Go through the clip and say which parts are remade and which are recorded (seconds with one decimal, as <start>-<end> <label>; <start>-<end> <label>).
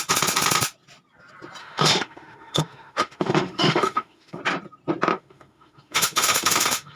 0.0-1.6 recorded; 1.6-4.4 remade; 4.4-5.1 recorded; 5.1-7.0 remade